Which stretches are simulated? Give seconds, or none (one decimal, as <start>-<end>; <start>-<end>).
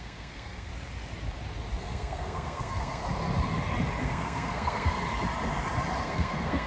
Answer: 0.0-0.7; 1.8-3.0; 4.0-5.0; 6.0-6.7